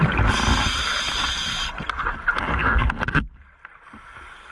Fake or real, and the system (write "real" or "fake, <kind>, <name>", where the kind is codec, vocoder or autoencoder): real